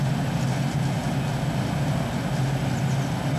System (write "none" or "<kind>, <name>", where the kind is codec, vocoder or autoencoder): none